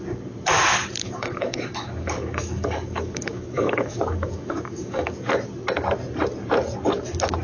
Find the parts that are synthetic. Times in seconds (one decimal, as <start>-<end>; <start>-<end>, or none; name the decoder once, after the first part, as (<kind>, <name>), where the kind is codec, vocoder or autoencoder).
1.0-5.3 (codec, DAC)